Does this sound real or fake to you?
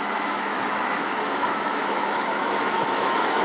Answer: fake